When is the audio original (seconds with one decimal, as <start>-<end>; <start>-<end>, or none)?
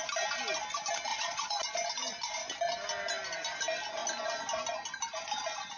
0.0-1.1; 1.6-5.8